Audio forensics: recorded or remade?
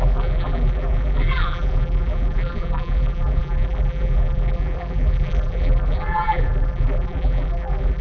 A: remade